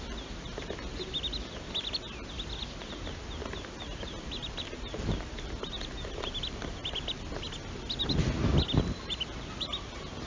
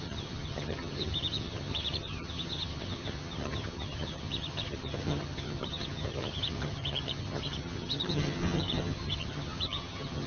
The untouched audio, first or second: first